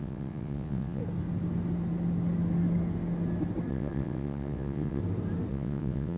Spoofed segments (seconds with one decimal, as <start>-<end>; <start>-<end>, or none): 0.0-1.0; 3.7-5.0; 5.5-6.2